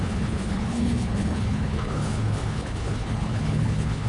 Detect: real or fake fake